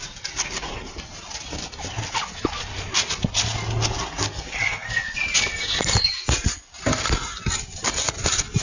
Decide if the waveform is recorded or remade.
recorded